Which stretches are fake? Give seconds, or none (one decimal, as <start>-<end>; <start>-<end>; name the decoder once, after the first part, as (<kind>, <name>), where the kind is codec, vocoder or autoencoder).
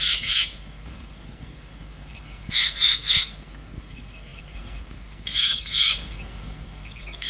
0.0-7.3 (codec, SNAC)